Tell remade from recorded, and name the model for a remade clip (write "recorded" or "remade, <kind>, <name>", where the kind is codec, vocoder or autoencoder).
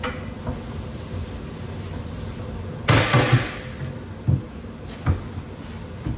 recorded